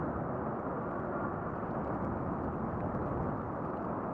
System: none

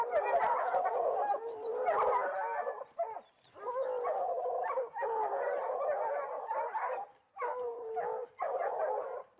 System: none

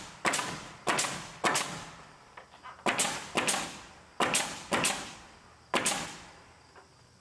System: none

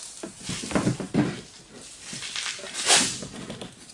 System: none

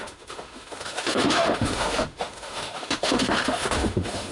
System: autoencoder, DAC-VAE